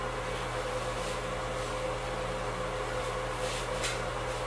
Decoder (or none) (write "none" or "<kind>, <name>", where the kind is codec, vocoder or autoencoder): none